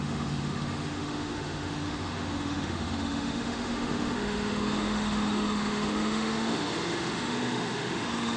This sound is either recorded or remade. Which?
remade